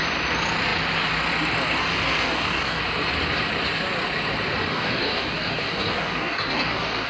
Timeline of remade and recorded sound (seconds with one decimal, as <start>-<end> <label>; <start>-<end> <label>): 0.0-1.8 recorded; 1.8-2.8 remade; 2.8-4.7 recorded; 4.7-7.1 remade